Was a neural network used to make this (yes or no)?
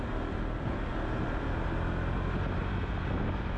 no